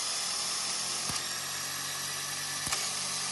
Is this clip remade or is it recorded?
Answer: recorded